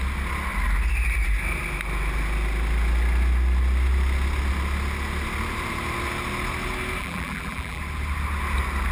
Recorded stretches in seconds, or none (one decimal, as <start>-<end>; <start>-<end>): 0.0-7.0; 7.8-8.9